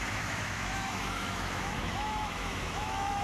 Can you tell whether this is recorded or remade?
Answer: remade